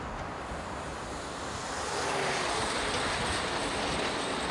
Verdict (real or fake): real